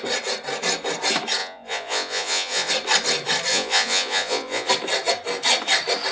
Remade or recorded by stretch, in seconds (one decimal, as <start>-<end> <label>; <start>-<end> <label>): 0.0-1.4 recorded; 1.4-2.7 remade; 2.7-3.5 recorded; 3.5-4.7 remade; 4.7-6.1 recorded